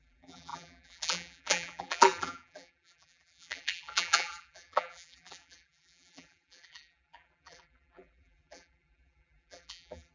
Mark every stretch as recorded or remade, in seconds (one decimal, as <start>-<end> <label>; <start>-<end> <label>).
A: 0.0-10.1 remade